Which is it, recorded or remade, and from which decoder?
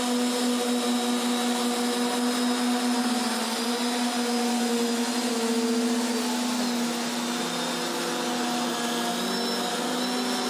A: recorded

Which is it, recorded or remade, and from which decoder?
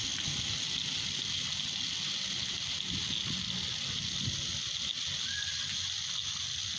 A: recorded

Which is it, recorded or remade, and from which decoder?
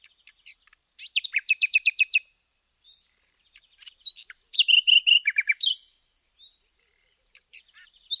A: remade, vocoder, BigVGAN v2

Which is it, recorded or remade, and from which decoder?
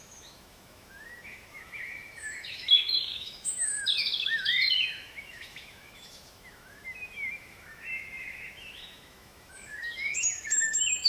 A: remade, autoencoder, DAC-VAE